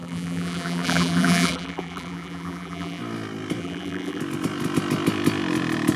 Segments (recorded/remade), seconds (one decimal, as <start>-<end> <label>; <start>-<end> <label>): 0.0-3.0 remade; 3.0-3.6 recorded; 3.6-4.2 remade; 4.2-6.0 recorded